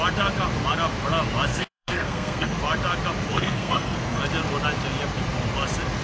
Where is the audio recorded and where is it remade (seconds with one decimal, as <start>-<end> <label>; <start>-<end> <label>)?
0.0-1.5 recorded; 1.5-2.6 remade; 2.6-3.3 recorded; 3.3-4.2 remade; 4.2-6.0 recorded

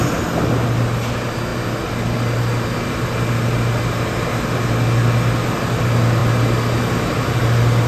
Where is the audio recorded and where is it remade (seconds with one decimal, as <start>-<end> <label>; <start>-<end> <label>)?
0.0-7.9 recorded

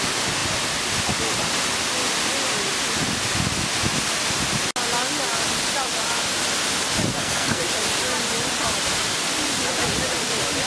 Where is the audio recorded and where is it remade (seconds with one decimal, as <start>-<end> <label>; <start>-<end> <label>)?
0.0-7.1 recorded; 7.1-7.6 remade; 7.6-10.7 recorded

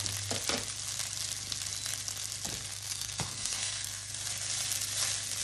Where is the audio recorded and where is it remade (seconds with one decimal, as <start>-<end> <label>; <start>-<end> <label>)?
0.0-2.7 recorded; 2.7-4.1 remade; 4.1-5.4 recorded